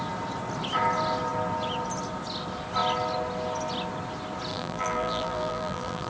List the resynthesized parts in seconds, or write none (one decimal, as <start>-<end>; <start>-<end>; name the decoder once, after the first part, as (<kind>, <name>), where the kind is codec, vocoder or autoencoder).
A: 4.5-6.1 (vocoder, BigVGAN v2)